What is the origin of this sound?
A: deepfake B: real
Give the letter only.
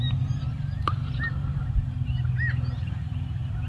B